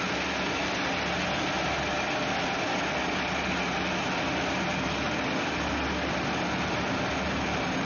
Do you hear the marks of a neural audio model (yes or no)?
no